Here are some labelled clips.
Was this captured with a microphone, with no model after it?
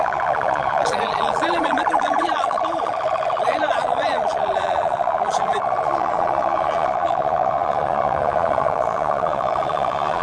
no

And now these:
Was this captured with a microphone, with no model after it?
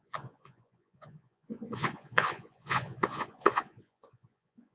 no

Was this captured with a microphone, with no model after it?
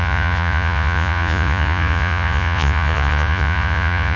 no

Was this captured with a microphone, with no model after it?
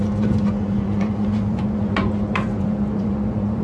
no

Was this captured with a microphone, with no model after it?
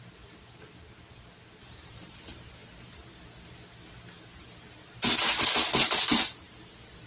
yes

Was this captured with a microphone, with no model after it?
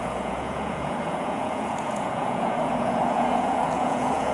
no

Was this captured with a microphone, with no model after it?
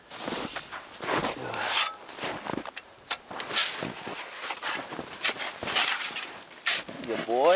yes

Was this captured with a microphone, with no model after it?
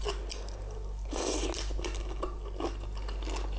yes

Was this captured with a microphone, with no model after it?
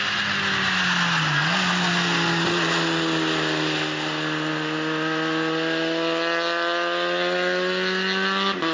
yes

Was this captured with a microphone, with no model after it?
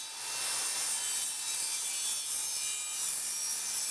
yes